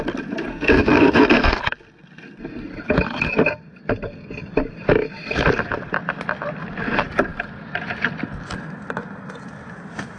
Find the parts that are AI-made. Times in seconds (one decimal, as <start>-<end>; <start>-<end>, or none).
0.5-1.6

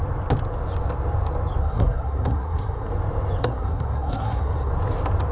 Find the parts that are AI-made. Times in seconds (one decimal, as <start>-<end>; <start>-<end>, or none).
1.6-2.9; 3.4-4.7

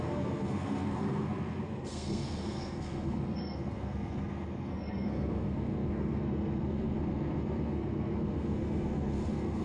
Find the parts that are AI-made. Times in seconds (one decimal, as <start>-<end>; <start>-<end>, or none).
0.0-9.6

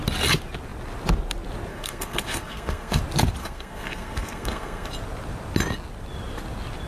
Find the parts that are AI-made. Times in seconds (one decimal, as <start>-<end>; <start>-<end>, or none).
1.7-3.0; 3.4-4.9